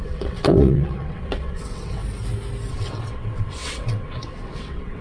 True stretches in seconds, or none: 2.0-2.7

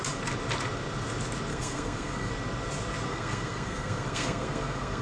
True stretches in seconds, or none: 0.0-1.5; 2.3-3.1

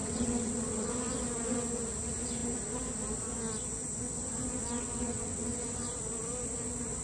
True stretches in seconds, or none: 0.9-4.6; 5.6-7.0

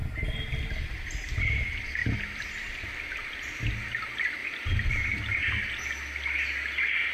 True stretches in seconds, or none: 0.0-2.0; 4.0-4.4; 4.9-7.1

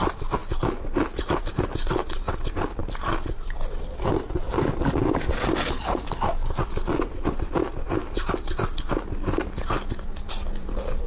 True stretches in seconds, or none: 0.0-11.1

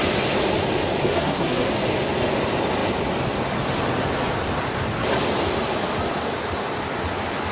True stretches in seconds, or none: 0.0-1.0; 1.7-7.5